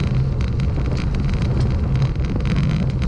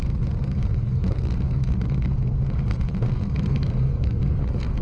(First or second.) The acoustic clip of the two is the first